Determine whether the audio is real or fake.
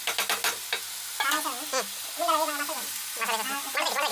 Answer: real